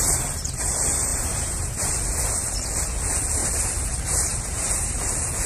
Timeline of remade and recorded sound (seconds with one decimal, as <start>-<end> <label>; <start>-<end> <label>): 0.0-0.7 remade; 0.7-1.1 recorded; 1.1-1.9 remade; 1.9-3.4 recorded; 3.4-5.0 remade; 5.0-5.5 recorded